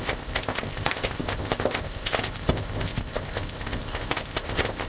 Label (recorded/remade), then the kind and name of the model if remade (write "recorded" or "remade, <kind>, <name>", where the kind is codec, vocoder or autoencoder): remade, codec, ZipCodec